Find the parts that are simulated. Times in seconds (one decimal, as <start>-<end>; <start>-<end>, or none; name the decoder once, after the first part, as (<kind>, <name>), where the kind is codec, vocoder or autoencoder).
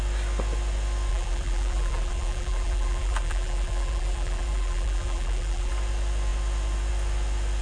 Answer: 1.1-5.7 (vocoder, BigVGAN v2)